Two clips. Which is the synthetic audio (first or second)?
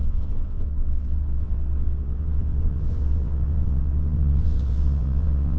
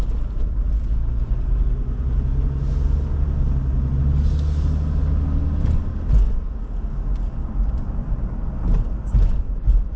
first